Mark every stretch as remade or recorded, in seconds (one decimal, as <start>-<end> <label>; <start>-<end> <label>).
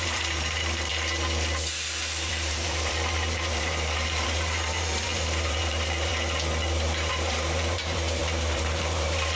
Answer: 0.0-0.9 remade; 0.9-2.3 recorded; 2.3-6.1 remade; 6.1-7.1 recorded; 7.1-9.4 remade